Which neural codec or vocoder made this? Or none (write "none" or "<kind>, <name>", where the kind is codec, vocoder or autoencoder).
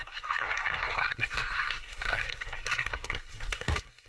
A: codec, SNAC